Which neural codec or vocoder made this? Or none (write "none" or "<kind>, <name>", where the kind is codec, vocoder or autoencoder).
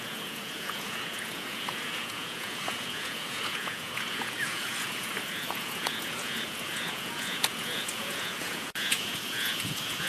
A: vocoder, Vocos